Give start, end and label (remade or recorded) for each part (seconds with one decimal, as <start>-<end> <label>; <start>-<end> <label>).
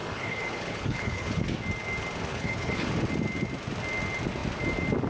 0.0-1.4 remade; 1.4-2.3 recorded; 2.3-2.9 remade; 2.9-5.1 recorded